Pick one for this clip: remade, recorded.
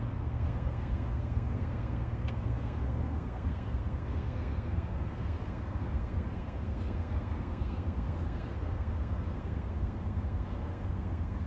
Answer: remade